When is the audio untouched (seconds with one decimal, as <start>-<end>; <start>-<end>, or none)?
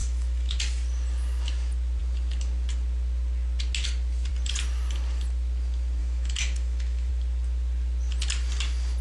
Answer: 0.6-6.0; 7.1-9.0